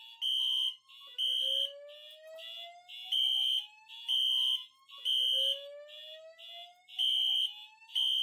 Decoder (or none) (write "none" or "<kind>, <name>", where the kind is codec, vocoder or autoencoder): none